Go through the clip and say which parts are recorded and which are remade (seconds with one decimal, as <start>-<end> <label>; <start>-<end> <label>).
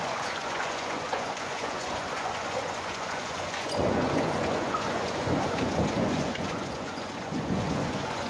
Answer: 0.0-8.3 remade